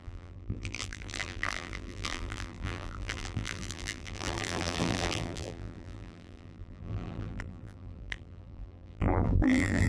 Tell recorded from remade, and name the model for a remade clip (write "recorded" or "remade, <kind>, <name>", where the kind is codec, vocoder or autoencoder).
remade, vocoder, BigVGAN v2